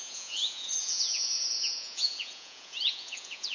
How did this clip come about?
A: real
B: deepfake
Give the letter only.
B